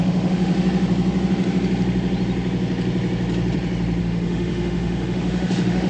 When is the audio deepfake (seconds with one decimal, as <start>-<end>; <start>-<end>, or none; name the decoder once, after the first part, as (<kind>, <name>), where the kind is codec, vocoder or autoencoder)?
0.0-0.5 (autoencoder, DAC-VAE); 4.0-5.9